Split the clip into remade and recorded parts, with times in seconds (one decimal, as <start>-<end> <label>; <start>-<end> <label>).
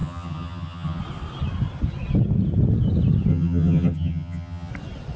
0.0-1.0 remade; 1.0-3.3 recorded; 3.3-4.7 remade; 4.7-5.2 recorded